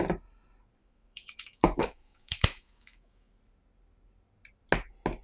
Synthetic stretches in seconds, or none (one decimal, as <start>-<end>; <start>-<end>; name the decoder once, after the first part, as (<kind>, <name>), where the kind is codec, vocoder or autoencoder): 0.8-3.4 (autoencoder, DAC-VAE)